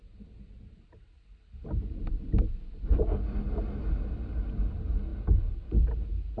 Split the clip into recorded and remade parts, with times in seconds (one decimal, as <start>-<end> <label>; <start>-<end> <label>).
0.0-6.4 recorded